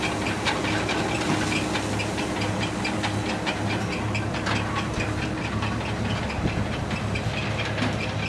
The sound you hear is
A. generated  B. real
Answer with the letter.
B